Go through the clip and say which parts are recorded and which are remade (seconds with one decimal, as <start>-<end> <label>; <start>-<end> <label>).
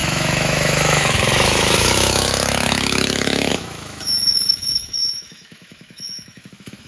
0.0-6.9 remade